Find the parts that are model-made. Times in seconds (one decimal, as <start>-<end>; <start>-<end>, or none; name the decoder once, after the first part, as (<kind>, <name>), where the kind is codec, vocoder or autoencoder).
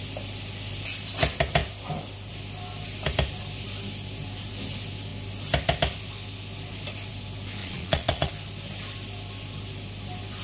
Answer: 7.6-8.3 (vocoder, Vocos)